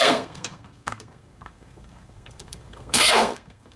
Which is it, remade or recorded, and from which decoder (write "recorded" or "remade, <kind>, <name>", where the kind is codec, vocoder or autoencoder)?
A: remade, codec, SNAC